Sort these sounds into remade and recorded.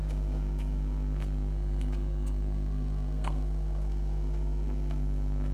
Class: remade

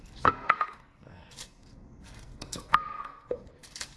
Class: remade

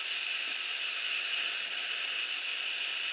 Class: recorded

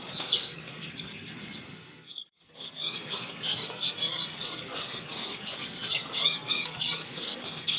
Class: remade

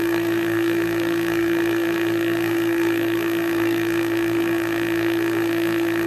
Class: remade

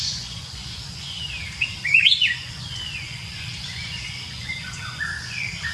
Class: remade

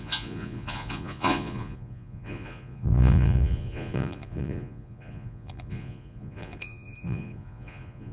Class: remade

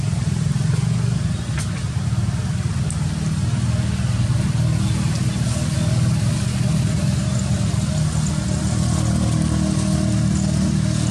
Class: recorded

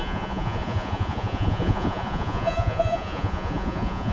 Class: remade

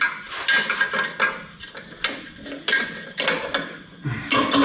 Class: recorded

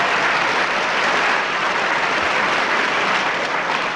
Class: recorded